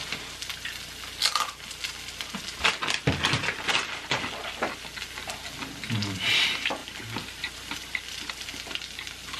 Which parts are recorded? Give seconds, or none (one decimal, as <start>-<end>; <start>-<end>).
0.0-6.8; 8.5-9.4